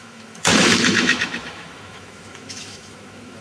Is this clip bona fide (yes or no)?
no